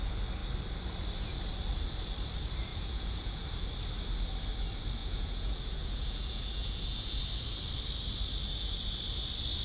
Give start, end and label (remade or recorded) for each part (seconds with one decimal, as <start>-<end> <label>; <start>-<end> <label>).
0.0-2.7 recorded; 2.7-3.4 remade; 3.4-5.0 recorded; 5.0-7.2 remade; 7.2-9.6 recorded